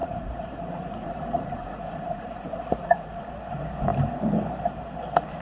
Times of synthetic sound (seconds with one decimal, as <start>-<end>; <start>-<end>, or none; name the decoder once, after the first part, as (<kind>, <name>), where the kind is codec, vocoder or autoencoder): 0.0-3.2 (vocoder, Vocos)

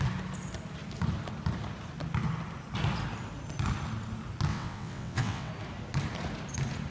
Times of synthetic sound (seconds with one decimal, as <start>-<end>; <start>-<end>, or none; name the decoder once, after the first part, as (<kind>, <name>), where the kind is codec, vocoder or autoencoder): 4.5-5.5 (vocoder, WaveNeXt)

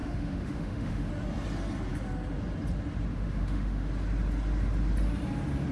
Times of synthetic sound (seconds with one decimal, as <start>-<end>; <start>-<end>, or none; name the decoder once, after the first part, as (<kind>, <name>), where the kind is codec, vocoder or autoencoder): 0.0-1.1 (autoencoder, DAC-VAE); 3.1-3.9

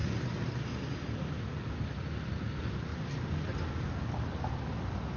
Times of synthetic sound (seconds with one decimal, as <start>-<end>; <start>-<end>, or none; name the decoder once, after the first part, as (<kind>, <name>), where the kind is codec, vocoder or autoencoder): none

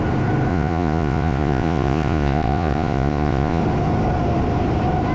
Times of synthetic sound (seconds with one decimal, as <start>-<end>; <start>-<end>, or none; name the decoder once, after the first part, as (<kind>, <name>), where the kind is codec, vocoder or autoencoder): 0.5-3.6 (vocoder, Vocos)